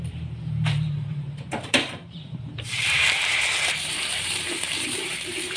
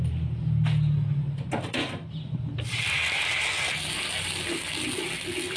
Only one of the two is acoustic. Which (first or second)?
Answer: second